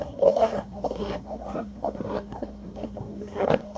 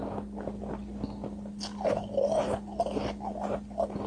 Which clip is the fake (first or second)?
first